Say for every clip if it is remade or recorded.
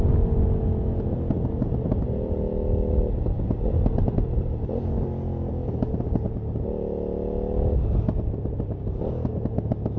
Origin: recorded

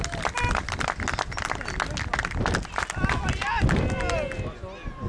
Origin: recorded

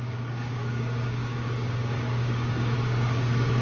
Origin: remade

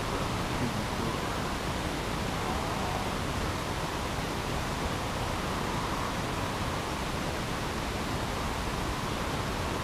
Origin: recorded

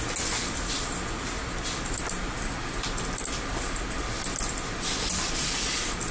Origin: recorded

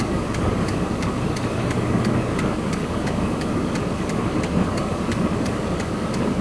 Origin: remade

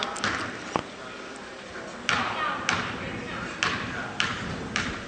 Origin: recorded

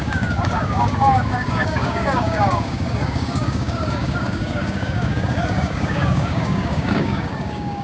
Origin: remade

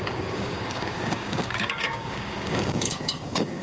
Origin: remade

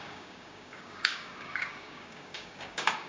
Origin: remade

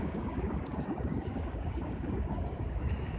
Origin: remade